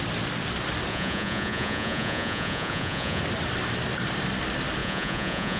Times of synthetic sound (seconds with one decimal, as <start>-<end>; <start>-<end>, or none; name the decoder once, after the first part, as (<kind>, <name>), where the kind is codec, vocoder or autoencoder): 0.9-3.2 (vocoder, Vocos); 4.8-5.6